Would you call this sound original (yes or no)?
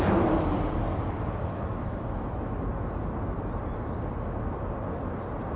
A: yes